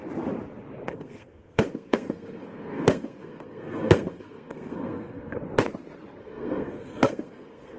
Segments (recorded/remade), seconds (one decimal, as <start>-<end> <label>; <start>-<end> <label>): 0.0-0.9 recorded; 0.9-5.4 remade; 5.4-6.2 recorded; 6.2-7.8 remade